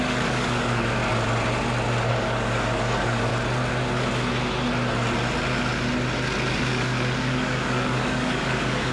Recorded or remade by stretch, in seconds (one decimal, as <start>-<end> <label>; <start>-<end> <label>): 0.0-1.0 remade; 1.0-2.1 recorded; 2.1-3.3 remade; 3.3-6.5 recorded; 6.5-8.9 remade